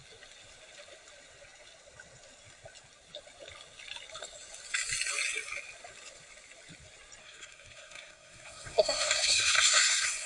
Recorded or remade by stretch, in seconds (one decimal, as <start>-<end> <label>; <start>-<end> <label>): 0.0-7.2 recorded; 7.2-10.3 remade